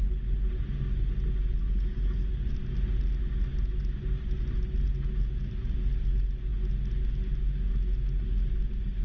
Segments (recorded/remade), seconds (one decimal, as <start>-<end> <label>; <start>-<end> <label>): 0.0-1.6 recorded; 1.6-2.3 remade; 2.3-9.0 recorded